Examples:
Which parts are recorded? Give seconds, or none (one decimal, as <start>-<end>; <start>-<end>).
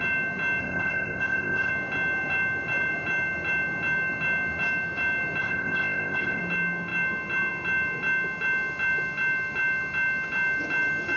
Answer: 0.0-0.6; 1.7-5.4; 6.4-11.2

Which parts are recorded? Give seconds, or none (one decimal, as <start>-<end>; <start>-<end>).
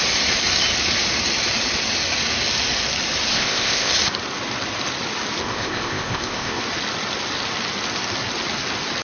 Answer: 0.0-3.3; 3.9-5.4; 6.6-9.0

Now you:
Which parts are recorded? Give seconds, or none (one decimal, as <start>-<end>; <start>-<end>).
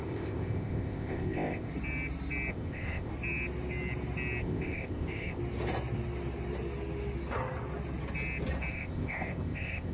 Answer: 1.7-2.5; 3.1-4.4; 5.4-8.7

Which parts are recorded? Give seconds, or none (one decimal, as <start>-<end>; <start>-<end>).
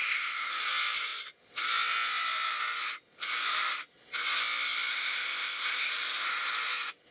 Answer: 0.5-4.9; 5.9-7.1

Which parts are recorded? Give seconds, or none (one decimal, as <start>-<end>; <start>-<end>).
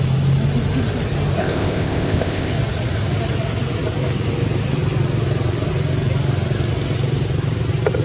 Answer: 0.0-1.4; 2.5-8.0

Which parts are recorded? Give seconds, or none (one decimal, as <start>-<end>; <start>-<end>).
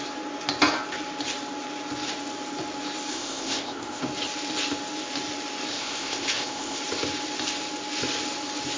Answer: 0.0-3.1; 4.0-5.7; 6.8-8.8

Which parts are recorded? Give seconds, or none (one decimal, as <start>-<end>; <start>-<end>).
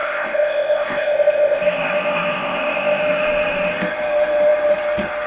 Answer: 3.0-5.3